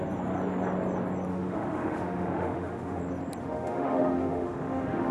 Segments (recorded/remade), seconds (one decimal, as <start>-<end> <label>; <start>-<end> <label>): 0.0-1.3 recorded; 1.3-3.0 remade; 3.0-3.4 recorded; 3.4-5.1 remade